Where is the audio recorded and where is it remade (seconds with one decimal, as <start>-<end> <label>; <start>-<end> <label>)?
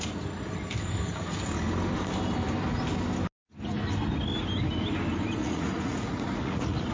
0.0-5.4 recorded; 5.4-6.9 remade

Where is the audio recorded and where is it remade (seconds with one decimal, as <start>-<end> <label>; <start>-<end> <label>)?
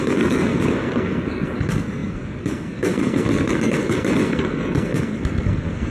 0.0-5.9 remade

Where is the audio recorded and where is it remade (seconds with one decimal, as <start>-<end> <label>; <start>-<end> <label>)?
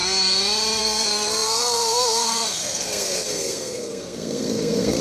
0.0-0.8 recorded; 0.8-5.0 remade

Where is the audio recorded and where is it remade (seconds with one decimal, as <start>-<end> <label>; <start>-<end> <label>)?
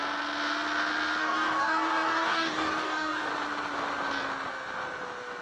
0.0-1.2 recorded; 1.2-3.3 remade; 3.3-5.4 recorded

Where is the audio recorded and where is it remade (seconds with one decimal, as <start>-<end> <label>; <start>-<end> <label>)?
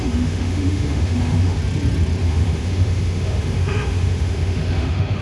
0.0-1.6 remade; 1.6-2.2 recorded; 2.2-5.2 remade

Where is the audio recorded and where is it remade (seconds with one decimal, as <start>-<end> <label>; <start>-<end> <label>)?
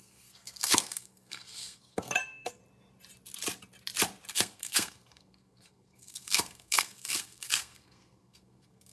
0.0-2.6 remade; 2.6-4.3 recorded; 4.3-8.9 remade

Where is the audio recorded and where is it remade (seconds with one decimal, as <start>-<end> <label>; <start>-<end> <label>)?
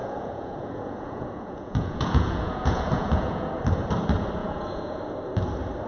0.0-3.5 remade; 3.5-4.4 recorded; 4.4-5.0 remade; 5.0-5.9 recorded